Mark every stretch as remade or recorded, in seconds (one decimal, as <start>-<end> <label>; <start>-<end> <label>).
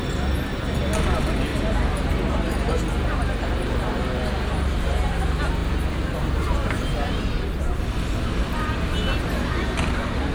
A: 0.0-1.5 recorded; 1.5-2.1 remade; 2.1-5.6 recorded; 5.6-7.2 remade; 7.2-10.3 recorded